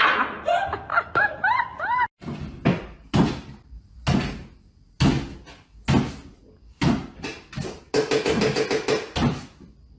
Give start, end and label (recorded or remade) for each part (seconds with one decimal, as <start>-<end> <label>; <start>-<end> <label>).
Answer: 0.0-10.0 recorded

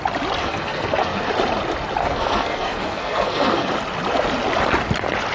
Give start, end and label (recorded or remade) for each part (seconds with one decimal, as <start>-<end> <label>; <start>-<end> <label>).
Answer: 0.0-0.4 recorded; 0.4-1.3 remade; 1.3-2.0 recorded; 2.0-3.7 remade; 3.7-5.3 recorded